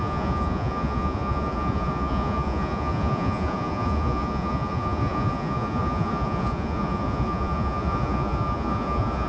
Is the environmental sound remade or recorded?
remade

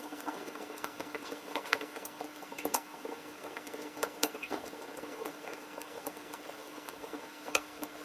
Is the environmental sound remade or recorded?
remade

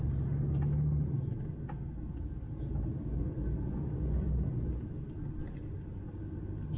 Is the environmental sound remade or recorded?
recorded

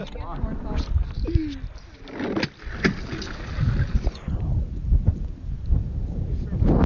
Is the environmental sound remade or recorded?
recorded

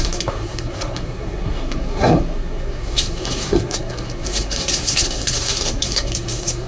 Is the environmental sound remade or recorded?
remade